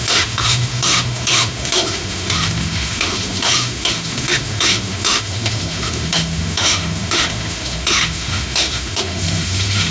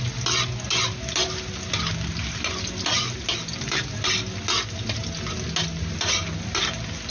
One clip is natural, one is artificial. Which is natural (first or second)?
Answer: second